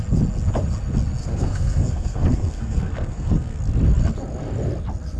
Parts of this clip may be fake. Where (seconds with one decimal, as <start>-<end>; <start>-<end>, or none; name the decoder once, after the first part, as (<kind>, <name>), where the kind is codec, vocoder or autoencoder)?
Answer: 1.2-3.6 (codec, SNAC)